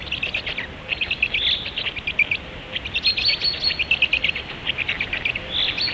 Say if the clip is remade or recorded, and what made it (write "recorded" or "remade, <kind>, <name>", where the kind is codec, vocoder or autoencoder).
recorded